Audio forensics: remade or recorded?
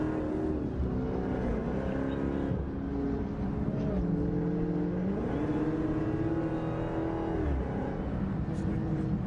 recorded